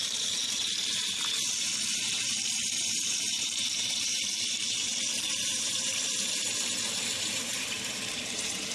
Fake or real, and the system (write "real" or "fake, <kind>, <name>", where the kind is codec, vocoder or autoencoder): fake, vocoder, BigVGAN v2